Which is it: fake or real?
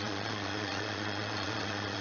fake